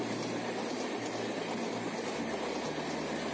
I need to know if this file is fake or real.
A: real